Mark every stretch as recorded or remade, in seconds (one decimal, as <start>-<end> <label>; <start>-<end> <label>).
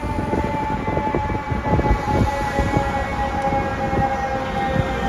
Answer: 0.0-5.1 recorded